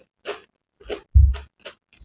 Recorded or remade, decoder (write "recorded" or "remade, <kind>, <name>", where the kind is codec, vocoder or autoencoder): recorded